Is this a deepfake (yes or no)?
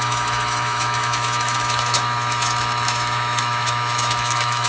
yes